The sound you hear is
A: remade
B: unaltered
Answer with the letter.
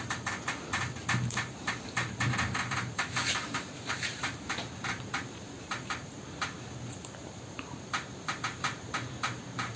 A